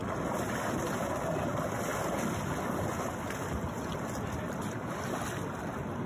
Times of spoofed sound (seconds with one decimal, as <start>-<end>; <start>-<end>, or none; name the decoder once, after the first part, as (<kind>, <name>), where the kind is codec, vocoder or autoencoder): none

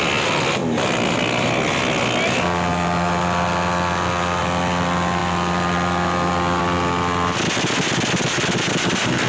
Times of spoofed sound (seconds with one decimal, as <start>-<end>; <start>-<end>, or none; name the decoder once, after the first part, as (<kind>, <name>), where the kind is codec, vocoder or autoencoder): none

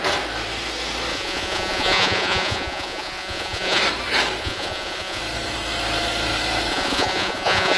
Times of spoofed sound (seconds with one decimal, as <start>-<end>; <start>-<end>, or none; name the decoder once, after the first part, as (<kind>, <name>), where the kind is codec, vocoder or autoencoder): 1.1-3.8 (vocoder, Vocos); 4.4-5.2; 6.7-7.8

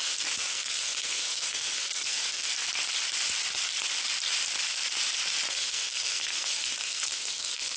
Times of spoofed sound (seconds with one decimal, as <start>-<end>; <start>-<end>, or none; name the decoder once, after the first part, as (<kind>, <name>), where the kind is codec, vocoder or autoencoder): 0.0-2.5 (codec, SNAC); 5.5-7.8

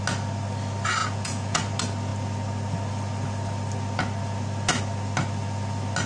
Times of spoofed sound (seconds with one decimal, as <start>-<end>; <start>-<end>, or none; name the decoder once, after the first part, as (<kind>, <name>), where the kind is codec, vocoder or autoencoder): 1.0-1.6 (vocoder, Vocos)

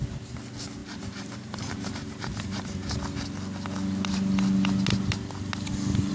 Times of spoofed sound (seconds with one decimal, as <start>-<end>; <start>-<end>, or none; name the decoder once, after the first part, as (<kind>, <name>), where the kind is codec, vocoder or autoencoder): 0.8-2.8 (vocoder, BigVGAN v2)

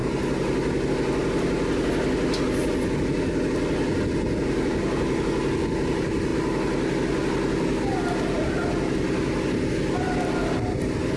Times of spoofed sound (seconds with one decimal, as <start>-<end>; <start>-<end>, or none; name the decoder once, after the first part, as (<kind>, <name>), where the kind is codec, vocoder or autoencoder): none